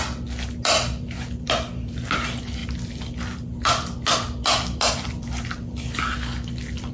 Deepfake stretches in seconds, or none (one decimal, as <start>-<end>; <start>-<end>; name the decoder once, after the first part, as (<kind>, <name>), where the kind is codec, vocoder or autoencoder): none

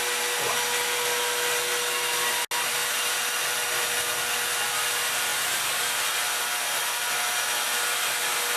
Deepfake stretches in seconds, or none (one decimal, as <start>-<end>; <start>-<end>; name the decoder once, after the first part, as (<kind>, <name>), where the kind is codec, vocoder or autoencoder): none

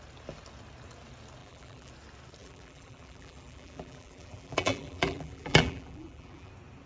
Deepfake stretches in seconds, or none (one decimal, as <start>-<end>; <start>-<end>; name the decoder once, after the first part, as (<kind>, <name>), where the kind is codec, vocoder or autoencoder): 1.4-1.9 (vocoder, BigVGAN v2); 2.4-6.5

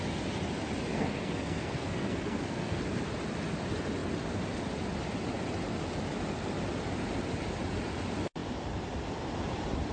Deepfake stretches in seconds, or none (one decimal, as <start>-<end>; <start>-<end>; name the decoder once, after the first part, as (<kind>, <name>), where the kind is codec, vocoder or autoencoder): 0.9-2.8 (codec, SNAC)